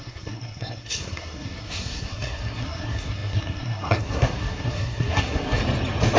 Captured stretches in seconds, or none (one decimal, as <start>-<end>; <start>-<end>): 5.6-6.2